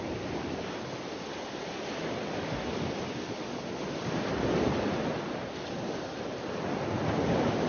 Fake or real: real